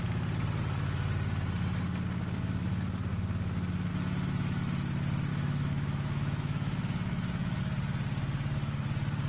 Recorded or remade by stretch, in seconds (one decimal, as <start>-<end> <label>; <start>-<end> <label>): 0.0-5.3 recorded; 5.3-7.6 remade; 7.6-9.3 recorded